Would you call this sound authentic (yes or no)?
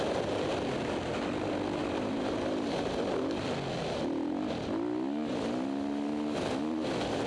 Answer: yes